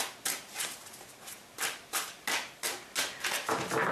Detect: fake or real real